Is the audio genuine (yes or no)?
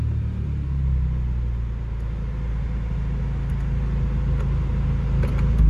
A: yes